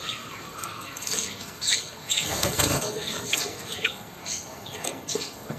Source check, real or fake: fake